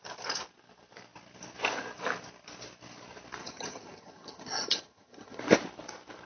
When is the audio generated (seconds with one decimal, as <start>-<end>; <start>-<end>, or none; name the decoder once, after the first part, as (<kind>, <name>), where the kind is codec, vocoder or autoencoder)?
3.4-5.4 (vocoder, HiFi-GAN)

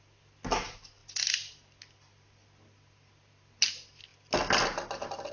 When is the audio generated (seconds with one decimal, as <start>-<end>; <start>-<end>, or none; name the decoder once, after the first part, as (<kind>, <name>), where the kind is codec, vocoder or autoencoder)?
none

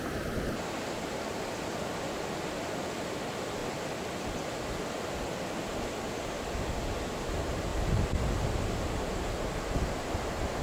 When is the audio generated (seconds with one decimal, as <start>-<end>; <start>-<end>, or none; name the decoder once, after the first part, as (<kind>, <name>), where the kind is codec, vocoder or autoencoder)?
none

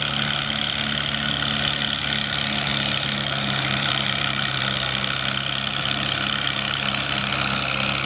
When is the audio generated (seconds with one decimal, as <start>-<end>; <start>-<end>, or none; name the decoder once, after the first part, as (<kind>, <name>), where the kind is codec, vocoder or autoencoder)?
2.7-4.6 (vocoder, BigVGAN v2); 5.7-7.3

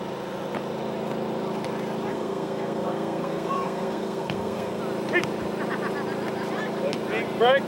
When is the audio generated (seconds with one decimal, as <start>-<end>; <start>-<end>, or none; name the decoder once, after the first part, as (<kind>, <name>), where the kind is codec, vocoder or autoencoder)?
2.1-4.8 (codec, SNAC)